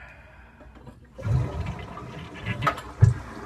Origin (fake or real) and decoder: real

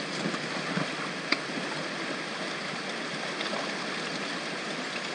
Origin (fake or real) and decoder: real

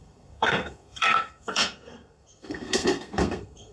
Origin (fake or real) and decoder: fake, codec, SNAC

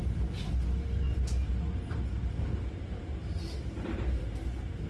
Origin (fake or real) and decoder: real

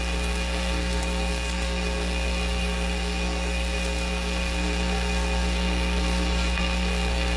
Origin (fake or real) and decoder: fake, codec, SNAC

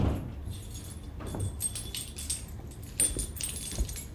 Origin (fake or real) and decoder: real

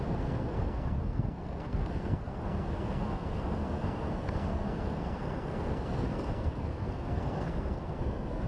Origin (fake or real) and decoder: fake, codec, SNAC